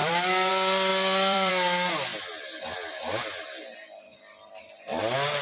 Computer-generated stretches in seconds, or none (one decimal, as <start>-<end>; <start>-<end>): 0.0-0.5; 0.9-1.5; 4.1-5.0